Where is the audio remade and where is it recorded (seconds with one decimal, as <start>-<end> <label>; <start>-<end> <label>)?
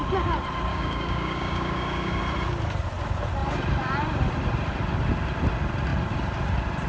0.0-0.7 recorded; 0.7-2.2 remade; 2.2-6.9 recorded